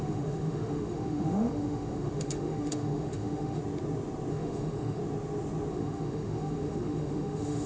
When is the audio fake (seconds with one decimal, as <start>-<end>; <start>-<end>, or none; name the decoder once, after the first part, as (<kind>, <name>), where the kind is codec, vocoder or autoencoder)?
0.0-3.6 (autoencoder, DAC-VAE); 4.3-5.0; 5.7-7.7